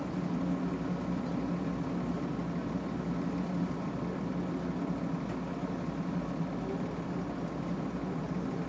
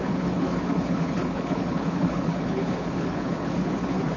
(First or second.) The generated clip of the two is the second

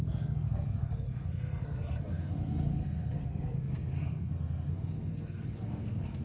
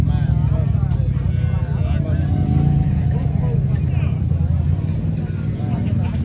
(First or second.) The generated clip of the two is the first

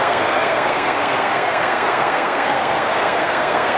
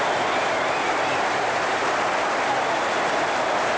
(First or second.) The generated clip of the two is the first